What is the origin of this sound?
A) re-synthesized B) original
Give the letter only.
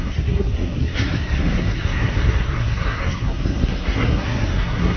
A